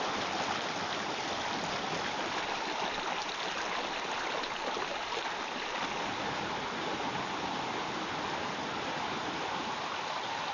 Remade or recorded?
recorded